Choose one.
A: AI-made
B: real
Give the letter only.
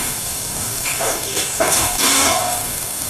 A